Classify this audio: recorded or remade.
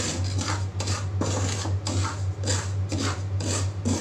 recorded